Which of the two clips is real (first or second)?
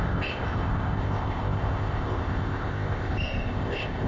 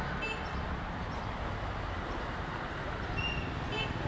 second